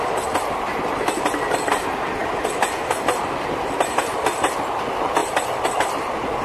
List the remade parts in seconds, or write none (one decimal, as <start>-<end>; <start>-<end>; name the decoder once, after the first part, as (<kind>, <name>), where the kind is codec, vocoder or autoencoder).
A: none